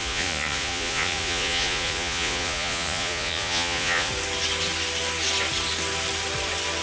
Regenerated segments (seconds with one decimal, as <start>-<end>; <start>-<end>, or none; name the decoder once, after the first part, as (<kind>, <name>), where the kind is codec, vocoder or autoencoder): 0.0-4.1 (vocoder, Vocos)